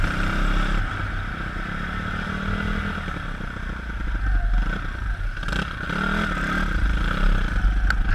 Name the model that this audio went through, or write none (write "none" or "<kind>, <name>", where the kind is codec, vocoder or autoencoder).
none